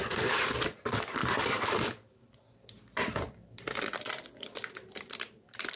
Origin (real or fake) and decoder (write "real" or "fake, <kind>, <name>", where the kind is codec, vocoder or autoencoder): fake, vocoder, BigVGAN v2